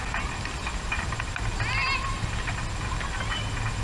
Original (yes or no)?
yes